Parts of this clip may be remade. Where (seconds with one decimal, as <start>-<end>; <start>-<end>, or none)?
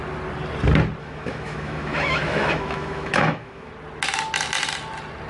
1.0-3.7